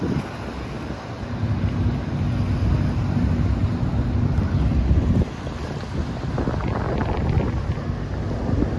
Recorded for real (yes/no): yes